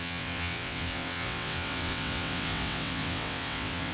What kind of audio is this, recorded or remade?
remade